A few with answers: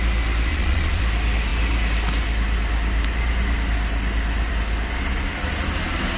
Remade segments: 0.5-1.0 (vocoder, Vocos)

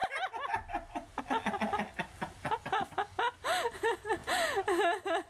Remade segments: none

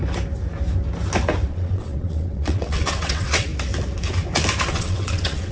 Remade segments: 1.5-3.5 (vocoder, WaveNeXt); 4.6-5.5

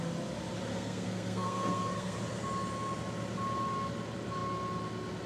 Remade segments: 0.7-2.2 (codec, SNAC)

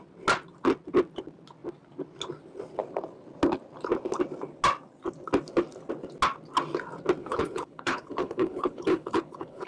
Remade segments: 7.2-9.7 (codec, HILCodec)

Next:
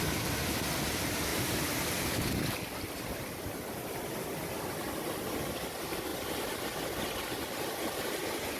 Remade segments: 1.3-3.5 (vocoder, BigVGAN v2)